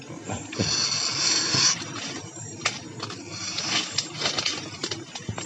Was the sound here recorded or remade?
recorded